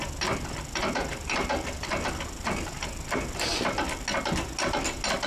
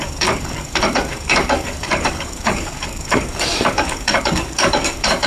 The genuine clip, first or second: first